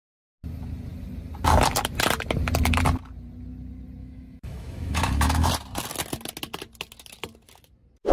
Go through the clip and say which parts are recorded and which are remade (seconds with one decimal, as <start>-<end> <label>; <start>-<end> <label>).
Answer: 0.0-4.0 recorded; 4.0-5.5 remade; 5.5-8.1 recorded